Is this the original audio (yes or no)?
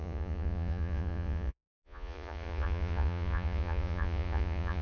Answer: no